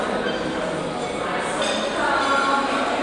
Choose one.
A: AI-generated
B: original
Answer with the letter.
B